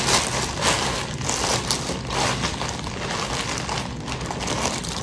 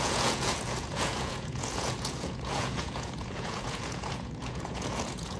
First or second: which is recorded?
first